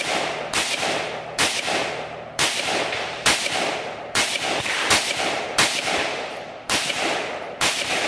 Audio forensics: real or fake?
fake